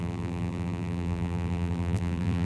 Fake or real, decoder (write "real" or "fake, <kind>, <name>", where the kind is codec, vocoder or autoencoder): fake, vocoder, BigVGAN v2